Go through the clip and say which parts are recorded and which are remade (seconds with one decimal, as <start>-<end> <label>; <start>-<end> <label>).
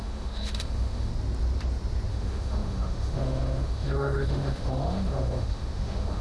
0.0-1.1 remade; 1.1-2.1 recorded; 2.1-6.2 remade